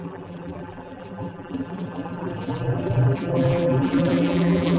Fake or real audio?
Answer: fake